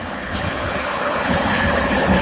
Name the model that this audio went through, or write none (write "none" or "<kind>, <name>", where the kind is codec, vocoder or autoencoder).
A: codec, HILCodec